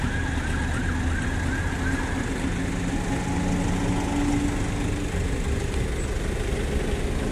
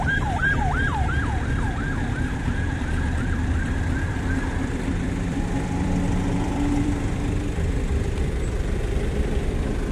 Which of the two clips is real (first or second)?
first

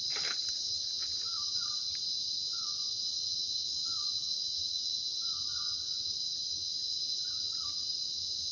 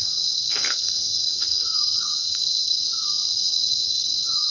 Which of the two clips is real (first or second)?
first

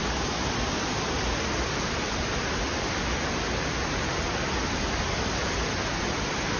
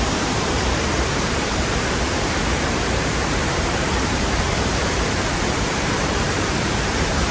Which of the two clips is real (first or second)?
first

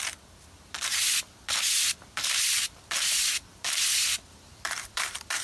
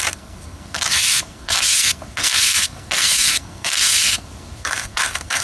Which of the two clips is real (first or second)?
first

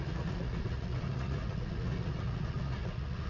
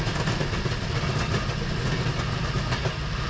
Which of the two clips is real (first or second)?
second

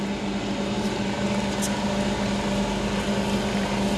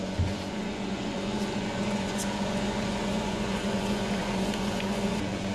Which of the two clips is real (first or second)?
first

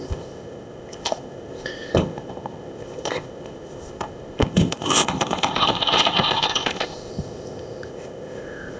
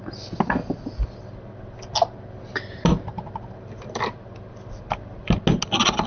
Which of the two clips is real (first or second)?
second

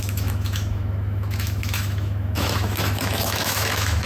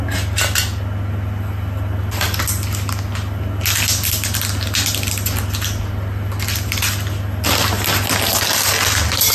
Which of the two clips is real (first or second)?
second